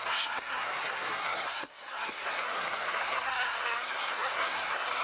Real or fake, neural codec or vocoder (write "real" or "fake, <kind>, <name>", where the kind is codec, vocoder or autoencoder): fake, codec, SNAC